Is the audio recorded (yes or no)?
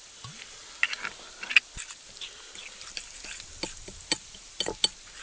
yes